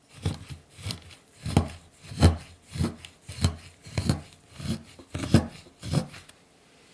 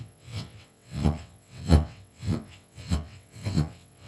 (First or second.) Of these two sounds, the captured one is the first